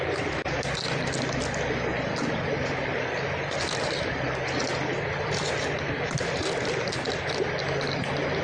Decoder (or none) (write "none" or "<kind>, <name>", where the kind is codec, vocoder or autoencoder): none